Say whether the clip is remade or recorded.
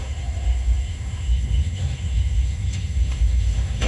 remade